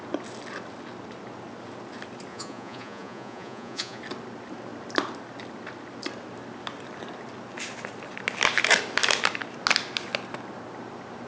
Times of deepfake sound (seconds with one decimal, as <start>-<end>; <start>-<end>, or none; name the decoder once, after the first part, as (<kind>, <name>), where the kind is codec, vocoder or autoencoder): 2.3-4.0 (vocoder, Vocos)